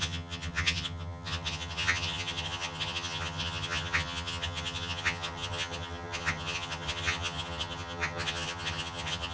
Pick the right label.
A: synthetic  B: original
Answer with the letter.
A